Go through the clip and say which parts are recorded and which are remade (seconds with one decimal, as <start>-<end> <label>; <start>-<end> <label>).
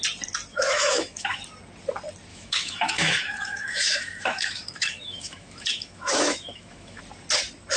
0.0-0.5 recorded; 0.5-1.4 remade; 1.4-2.3 recorded; 2.3-7.0 remade; 7.0-7.8 recorded